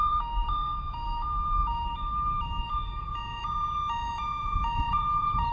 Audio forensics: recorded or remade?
remade